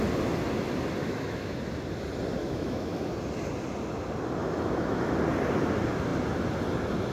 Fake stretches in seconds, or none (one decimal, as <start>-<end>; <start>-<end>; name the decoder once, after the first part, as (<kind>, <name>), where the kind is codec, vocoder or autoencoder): 1.0-1.6 (autoencoder, DAC-VAE); 2.4-3.1; 4.4-5.1